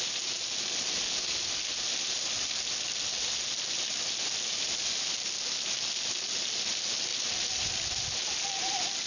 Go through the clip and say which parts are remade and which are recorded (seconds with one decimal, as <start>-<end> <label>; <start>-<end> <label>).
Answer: 0.0-7.1 recorded; 7.1-7.8 remade; 7.8-9.1 recorded